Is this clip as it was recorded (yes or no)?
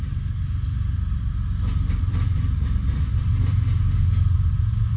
yes